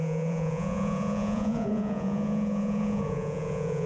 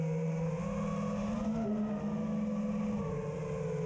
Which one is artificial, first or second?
first